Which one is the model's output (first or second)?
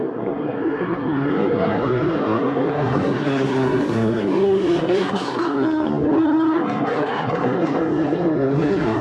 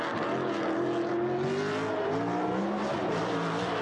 first